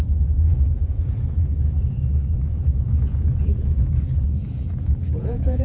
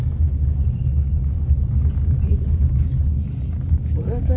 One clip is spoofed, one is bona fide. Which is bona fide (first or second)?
second